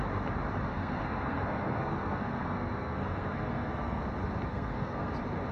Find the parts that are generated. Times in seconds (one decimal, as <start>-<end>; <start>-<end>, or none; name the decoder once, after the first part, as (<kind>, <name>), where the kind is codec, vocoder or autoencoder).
0.7-4.0 (codec, SNAC); 4.5-5.1